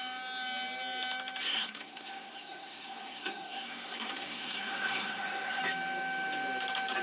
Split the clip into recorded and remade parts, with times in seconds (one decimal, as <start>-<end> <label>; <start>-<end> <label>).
0.0-1.4 recorded; 1.4-5.6 remade; 5.6-7.0 recorded